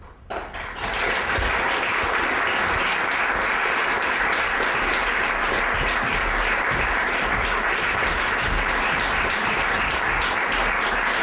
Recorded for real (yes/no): yes